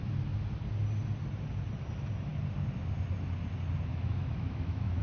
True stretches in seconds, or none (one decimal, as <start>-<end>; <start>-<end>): 0.0-3.9